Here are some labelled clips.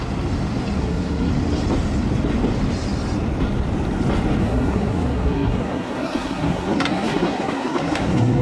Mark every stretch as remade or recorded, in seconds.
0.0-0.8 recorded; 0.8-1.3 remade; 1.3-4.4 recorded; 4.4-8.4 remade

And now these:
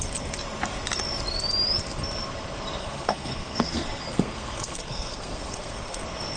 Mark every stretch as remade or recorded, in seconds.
0.0-2.8 recorded; 2.8-6.0 remade; 6.0-6.4 recorded

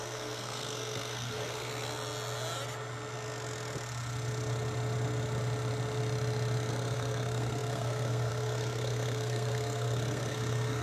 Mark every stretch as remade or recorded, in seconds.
0.0-1.7 remade; 1.7-6.7 recorded; 6.7-10.8 remade

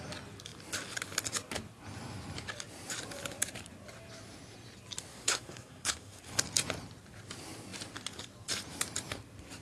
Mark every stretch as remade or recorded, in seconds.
0.0-5.1 recorded; 5.1-6.2 remade; 6.2-9.6 recorded

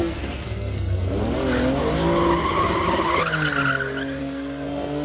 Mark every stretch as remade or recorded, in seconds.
0.0-1.2 remade; 1.2-4.2 recorded; 4.2-5.0 remade